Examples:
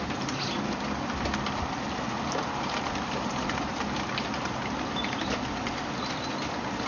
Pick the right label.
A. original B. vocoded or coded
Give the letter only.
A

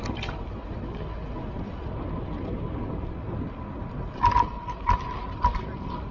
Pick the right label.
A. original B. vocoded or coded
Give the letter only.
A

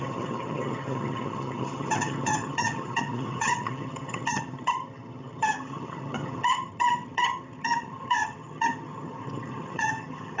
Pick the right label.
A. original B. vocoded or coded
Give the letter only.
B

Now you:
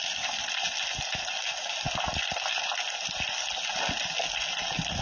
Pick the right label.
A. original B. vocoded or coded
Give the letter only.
A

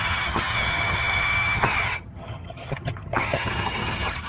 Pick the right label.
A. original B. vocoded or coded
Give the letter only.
B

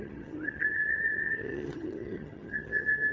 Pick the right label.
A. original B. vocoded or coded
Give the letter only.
B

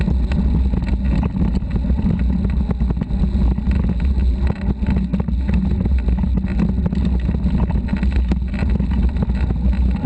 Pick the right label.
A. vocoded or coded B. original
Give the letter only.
B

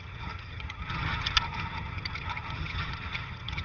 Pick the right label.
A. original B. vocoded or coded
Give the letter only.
B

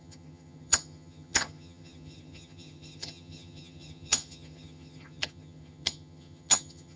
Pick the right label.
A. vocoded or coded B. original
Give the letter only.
A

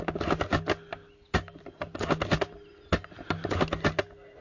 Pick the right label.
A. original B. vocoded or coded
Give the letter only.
A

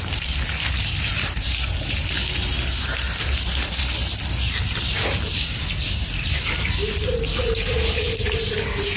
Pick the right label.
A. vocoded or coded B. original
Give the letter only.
B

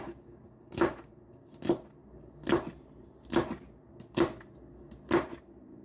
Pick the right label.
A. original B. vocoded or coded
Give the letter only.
A